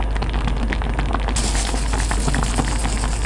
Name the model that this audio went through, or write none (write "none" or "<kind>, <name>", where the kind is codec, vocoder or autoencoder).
none